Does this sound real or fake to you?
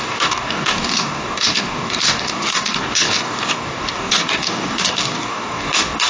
fake